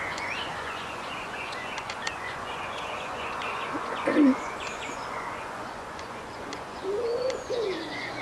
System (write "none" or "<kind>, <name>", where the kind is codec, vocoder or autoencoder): vocoder, Vocos